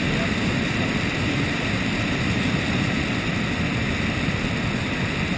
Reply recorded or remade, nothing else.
recorded